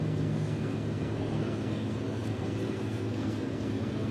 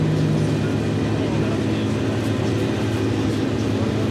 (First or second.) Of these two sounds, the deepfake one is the first